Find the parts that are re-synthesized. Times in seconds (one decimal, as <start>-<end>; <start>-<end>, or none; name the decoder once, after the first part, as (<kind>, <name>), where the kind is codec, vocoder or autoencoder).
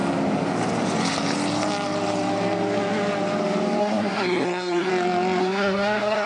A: 3.8-4.9 (codec, SNAC); 5.4-6.3